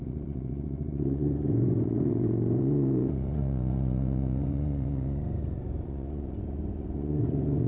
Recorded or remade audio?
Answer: remade